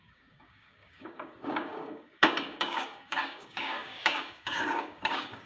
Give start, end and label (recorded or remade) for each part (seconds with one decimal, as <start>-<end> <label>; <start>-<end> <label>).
0.0-5.5 remade